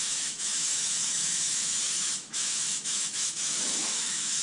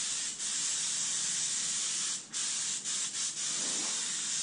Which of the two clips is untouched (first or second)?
second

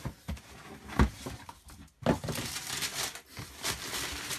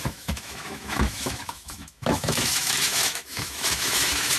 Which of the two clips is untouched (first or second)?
first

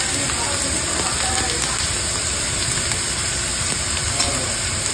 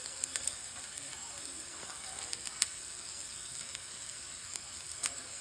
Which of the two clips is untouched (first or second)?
first